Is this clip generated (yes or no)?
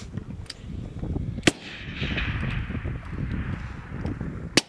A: no